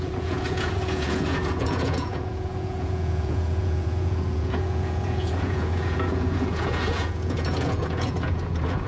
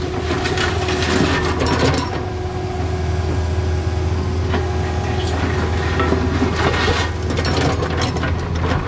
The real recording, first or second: second